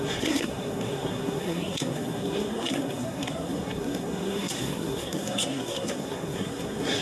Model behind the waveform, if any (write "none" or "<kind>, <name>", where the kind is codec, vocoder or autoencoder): codec, SNAC